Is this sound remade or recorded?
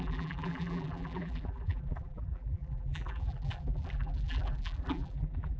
remade